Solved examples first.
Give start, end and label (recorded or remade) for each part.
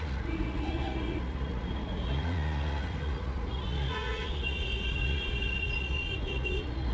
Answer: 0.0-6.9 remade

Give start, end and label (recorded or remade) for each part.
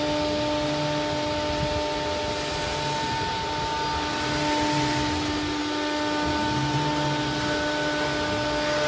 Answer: 0.0-8.9 recorded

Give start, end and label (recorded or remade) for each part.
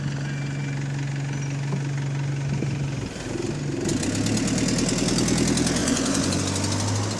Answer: 0.0-5.8 recorded; 5.8-6.4 remade; 6.4-7.2 recorded